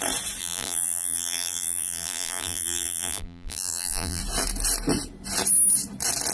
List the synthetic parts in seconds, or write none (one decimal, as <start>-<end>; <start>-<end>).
0.4-4.2